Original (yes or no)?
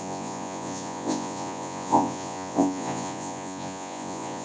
no